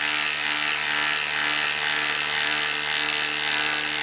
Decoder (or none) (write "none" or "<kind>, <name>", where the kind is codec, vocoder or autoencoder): none